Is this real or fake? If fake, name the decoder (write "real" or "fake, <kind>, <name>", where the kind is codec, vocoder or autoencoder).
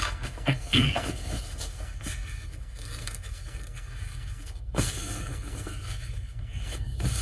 fake, codec, SNAC